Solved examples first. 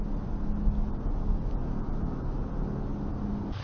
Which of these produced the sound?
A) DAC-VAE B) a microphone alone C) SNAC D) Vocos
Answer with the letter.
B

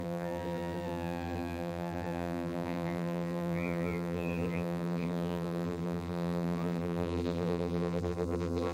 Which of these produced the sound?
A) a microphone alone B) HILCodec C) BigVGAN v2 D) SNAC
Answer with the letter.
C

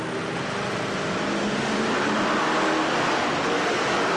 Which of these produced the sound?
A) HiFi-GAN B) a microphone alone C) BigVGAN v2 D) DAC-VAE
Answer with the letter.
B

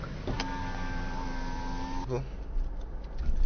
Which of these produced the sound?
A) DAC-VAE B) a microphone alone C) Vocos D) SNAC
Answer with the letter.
B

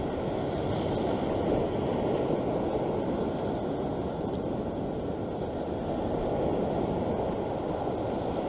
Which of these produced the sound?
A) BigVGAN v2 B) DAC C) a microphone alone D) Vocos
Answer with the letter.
C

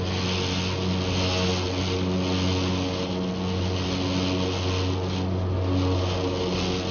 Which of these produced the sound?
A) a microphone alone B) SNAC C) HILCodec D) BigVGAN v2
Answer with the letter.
A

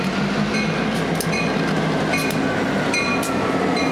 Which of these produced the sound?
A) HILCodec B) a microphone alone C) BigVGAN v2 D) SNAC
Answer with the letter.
B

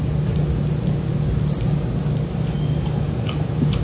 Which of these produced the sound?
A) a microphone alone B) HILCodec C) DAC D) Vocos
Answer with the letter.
A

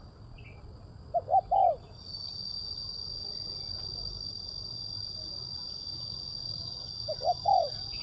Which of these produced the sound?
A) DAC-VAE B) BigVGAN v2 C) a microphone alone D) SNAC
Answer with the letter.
C